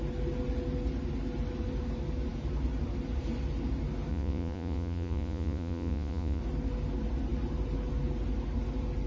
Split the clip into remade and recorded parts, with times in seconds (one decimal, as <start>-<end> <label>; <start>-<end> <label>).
0.0-4.1 recorded; 4.1-6.4 remade; 6.4-9.1 recorded